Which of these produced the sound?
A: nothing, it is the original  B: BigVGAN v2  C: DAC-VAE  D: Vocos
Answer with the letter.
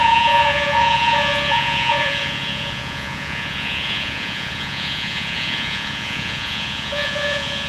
D